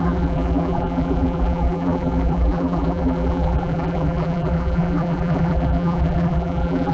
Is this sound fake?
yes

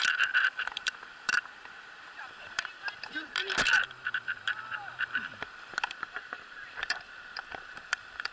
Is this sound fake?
yes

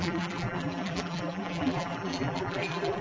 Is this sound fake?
yes